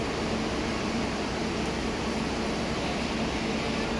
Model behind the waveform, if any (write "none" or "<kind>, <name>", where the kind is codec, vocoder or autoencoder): vocoder, BigVGAN v2